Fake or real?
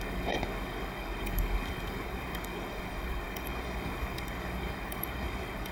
fake